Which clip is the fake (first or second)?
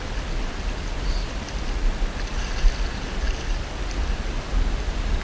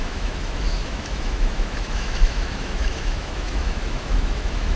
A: second